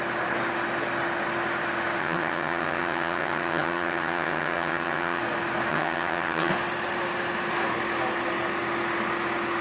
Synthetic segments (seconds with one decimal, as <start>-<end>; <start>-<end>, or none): 2.0-5.2; 5.7-6.5